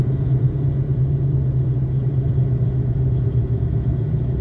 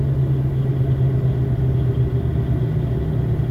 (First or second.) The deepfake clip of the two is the first